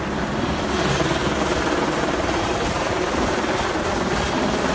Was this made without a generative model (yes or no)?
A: yes